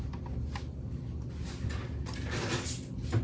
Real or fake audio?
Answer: real